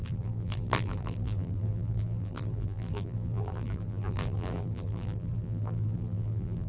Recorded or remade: remade